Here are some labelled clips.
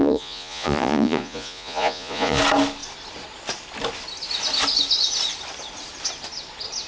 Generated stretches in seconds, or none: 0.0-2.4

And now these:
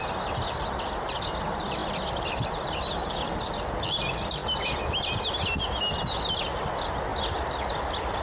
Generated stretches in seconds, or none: none

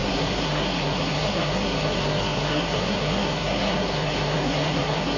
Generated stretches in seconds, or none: 0.0-5.2

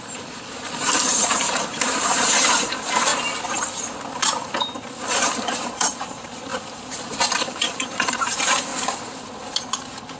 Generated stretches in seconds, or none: 0.0-3.1; 5.1-6.5; 7.3-8.7